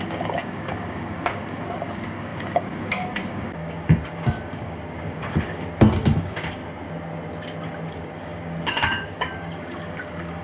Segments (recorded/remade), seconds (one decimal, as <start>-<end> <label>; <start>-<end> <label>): 0.0-6.6 remade; 6.6-7.9 recorded; 7.9-10.4 remade